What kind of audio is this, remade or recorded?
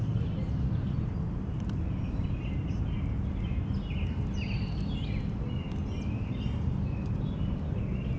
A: recorded